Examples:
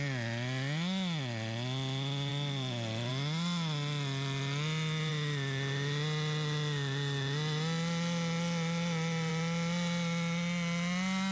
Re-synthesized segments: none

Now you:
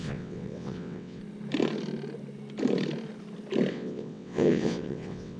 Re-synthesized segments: 0.0-1.2 (vocoder, WaveNeXt); 3.7-5.4

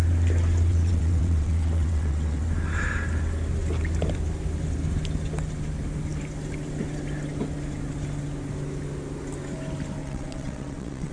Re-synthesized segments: 0.7-2.4 (vocoder, WaveNeXt); 10.0-11.1

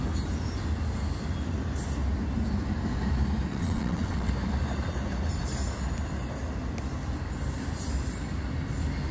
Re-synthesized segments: 3.5-4.3 (vocoder, WaveNeXt)

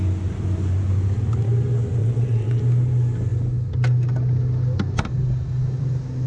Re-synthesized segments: 2.0-2.6 (vocoder, WaveNeXt)

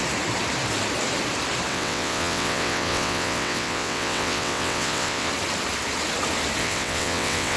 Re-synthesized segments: 1.7-5.3 (vocoder, WaveNeXt); 6.6-7.6

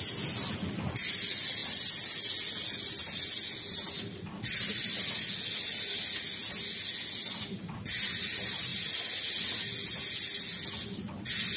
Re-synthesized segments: none

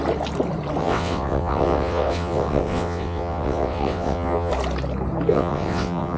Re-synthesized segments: 0.8-4.5 (vocoder, WaveNeXt); 5.3-6.2